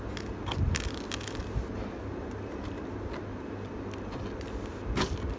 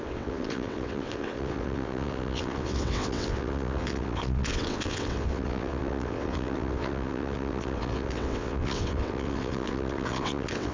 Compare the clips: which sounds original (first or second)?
first